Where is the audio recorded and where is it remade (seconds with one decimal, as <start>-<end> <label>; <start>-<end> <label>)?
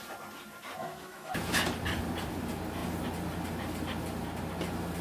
0.0-0.8 recorded; 0.8-1.3 remade; 1.3-5.0 recorded